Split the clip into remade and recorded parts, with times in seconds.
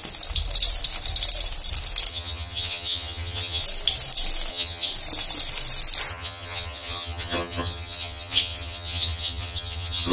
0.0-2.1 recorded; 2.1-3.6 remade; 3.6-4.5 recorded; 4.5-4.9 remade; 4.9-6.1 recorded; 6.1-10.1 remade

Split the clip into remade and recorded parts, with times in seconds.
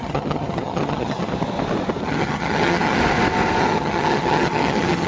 0.0-1.3 remade; 1.3-2.0 recorded; 2.0-3.0 remade; 3.0-3.6 recorded; 3.6-5.1 remade